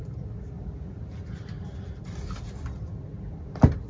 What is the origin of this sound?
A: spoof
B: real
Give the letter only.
B